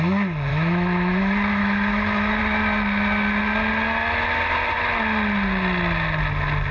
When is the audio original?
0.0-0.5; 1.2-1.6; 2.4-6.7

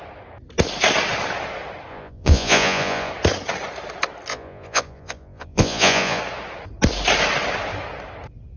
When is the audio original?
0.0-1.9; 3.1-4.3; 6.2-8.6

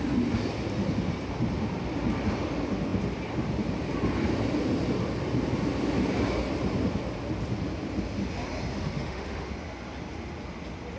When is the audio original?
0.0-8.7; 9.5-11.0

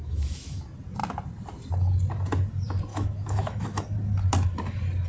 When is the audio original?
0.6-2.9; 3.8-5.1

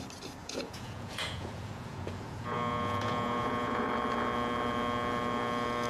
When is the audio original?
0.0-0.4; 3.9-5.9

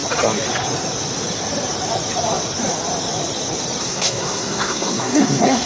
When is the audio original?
0.0-3.8

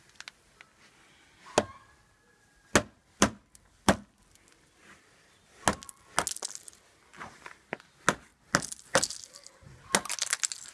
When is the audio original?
0.0-3.0; 5.6-7.1; 7.9-10.7